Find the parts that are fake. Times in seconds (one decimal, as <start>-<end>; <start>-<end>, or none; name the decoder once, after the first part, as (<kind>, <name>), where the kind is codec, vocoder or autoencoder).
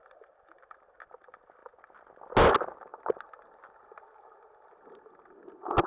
none